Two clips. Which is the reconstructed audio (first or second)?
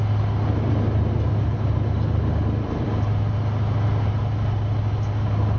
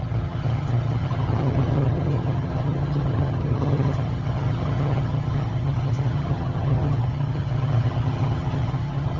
second